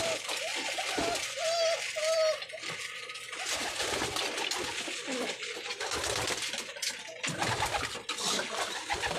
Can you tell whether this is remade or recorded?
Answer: recorded